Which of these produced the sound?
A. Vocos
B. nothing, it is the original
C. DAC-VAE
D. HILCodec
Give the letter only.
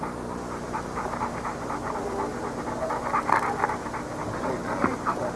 B